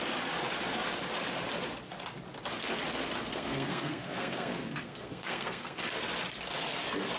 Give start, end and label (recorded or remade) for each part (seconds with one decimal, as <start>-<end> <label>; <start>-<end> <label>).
0.0-3.3 recorded; 3.3-5.8 remade; 5.8-7.2 recorded